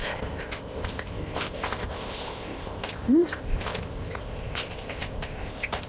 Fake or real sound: fake